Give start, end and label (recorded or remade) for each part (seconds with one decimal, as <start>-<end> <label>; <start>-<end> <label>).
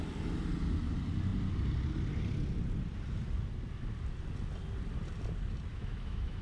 0.0-5.7 recorded; 5.7-6.4 remade